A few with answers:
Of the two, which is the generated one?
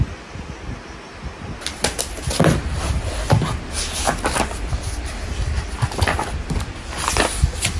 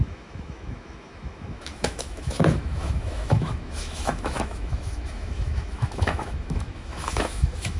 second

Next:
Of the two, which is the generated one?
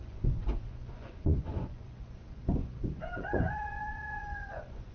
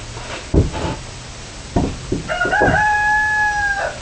first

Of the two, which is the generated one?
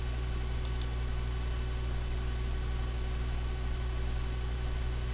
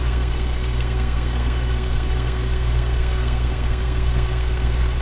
second